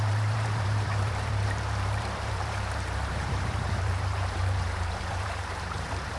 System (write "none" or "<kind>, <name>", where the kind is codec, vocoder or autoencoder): vocoder, BigVGAN v2